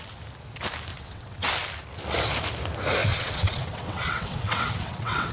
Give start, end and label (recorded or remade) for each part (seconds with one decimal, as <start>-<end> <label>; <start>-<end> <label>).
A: 0.0-0.9 recorded; 0.9-1.5 remade; 1.5-3.0 recorded; 3.0-5.3 remade